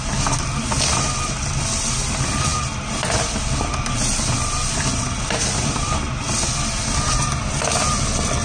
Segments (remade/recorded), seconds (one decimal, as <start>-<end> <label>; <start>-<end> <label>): 0.0-8.4 recorded